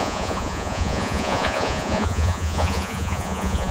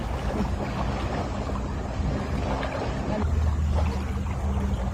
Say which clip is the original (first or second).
second